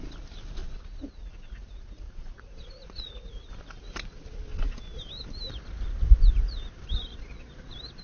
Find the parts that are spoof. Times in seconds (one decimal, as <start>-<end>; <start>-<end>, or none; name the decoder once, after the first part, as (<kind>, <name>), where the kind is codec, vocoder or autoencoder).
0.6-3.5 (vocoder, Vocos)